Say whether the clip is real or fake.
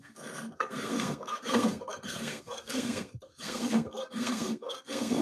fake